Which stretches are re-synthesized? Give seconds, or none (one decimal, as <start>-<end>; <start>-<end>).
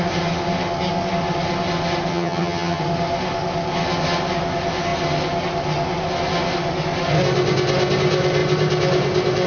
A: 2.1-2.8